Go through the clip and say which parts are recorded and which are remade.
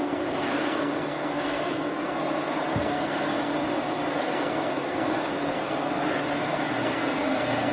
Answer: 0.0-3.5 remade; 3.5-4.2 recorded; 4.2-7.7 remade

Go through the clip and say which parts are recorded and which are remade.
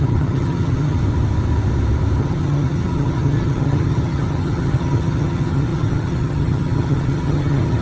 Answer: 0.0-1.0 remade; 1.0-2.2 recorded; 2.2-7.8 remade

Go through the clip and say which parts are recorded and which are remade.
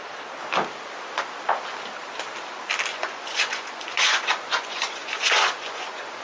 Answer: 0.0-2.9 recorded; 2.9-6.2 remade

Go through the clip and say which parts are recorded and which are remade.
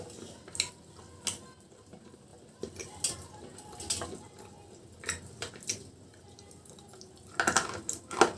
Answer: 0.0-8.4 recorded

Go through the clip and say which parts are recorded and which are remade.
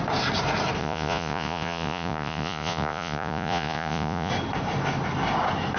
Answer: 0.0-0.8 recorded; 0.8-4.3 remade; 4.3-5.8 recorded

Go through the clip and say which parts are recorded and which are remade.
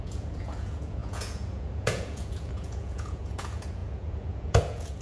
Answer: 0.0-5.0 remade